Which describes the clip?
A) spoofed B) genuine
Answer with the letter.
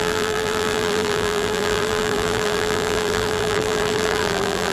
A